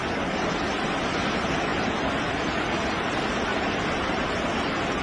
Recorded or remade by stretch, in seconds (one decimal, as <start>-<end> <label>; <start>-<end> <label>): 0.0-5.0 recorded